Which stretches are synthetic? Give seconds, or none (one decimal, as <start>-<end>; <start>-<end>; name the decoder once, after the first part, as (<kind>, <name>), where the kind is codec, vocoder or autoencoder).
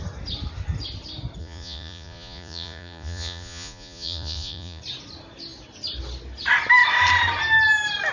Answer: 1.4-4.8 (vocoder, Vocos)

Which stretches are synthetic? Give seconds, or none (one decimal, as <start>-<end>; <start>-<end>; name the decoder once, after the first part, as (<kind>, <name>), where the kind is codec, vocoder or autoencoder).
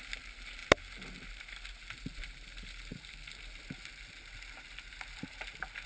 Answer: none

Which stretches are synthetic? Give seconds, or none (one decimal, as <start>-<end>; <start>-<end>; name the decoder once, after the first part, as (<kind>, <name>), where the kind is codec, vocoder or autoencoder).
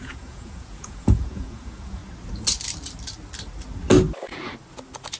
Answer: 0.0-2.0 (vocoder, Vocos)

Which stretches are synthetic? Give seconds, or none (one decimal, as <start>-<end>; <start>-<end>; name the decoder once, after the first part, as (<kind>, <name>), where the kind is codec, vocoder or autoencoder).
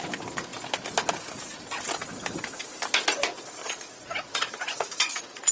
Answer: 3.6-5.5 (vocoder, Vocos)